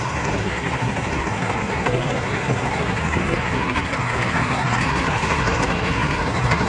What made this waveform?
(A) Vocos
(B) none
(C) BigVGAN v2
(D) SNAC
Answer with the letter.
D